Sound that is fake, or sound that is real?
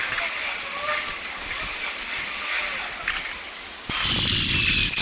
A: real